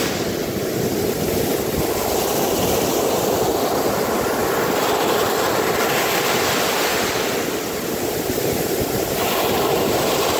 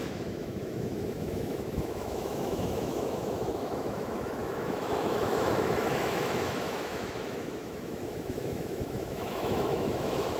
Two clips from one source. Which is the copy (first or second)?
second